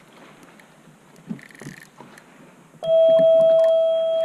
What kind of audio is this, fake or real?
real